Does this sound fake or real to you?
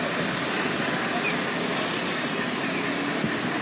real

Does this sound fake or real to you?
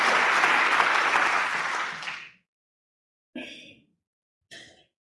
real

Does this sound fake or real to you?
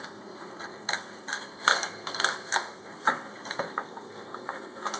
fake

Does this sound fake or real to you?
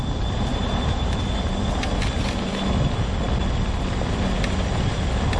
real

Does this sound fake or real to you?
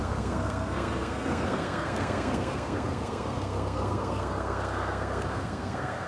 fake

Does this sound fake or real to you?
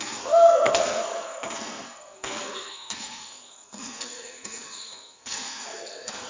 fake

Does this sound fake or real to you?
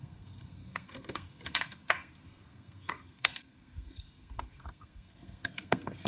fake